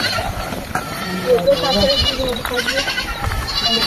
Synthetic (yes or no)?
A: yes